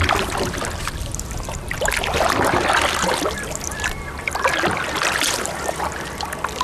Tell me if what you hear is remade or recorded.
recorded